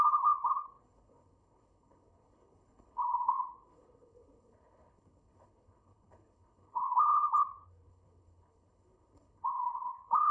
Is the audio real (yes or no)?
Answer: no